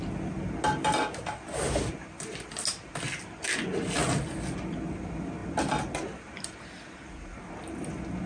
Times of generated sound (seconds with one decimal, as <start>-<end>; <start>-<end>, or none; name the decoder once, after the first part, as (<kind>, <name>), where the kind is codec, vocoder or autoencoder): none